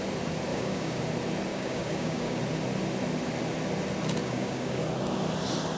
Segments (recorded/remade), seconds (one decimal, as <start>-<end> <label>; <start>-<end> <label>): 0.0-0.5 recorded; 0.5-1.0 remade; 1.0-1.5 recorded; 1.5-2.4 remade; 2.4-4.2 recorded; 4.2-4.8 remade; 4.8-5.8 recorded